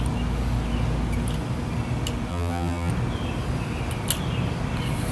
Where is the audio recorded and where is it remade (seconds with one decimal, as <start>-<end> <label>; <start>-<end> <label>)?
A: 0.0-2.3 recorded; 2.3-2.9 remade; 2.9-5.1 recorded